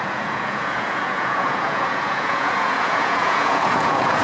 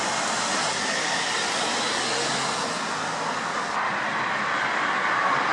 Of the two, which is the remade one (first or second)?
first